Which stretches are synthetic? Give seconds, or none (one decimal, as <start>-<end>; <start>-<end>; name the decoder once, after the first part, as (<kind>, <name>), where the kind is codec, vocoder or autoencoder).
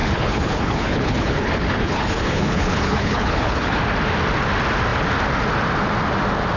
0.0-3.8 (codec, HILCodec)